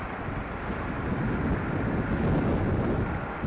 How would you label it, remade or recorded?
recorded